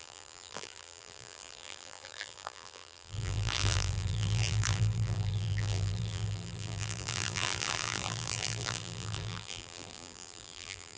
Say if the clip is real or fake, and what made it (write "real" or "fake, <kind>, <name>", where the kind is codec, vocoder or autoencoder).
fake, vocoder, BigVGAN v2